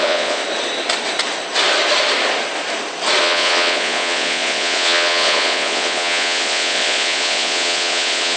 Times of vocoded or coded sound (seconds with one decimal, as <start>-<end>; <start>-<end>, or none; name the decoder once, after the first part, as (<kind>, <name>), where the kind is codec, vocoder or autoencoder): 0.0-0.4 (vocoder, Vocos); 3.2-8.4